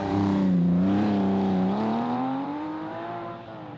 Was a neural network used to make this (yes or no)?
yes